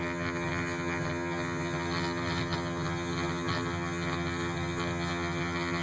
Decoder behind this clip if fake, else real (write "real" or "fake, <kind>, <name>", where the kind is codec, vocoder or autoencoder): fake, vocoder, HiFi-GAN